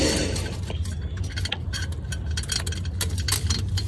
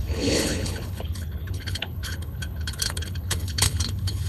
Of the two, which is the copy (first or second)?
second